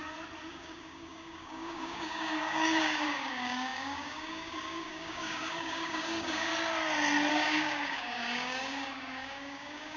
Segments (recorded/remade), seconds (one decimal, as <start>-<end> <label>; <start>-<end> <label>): 0.0-0.5 recorded; 0.5-6.5 remade; 6.5-7.3 recorded; 7.3-10.0 remade